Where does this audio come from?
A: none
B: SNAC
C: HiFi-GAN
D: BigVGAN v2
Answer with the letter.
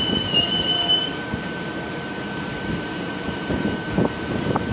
D